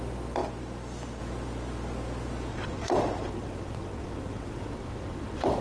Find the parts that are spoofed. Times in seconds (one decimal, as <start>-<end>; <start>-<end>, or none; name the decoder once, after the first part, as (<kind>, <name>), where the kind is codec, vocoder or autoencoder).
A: 2.5-5.6 (vocoder, WaveNeXt)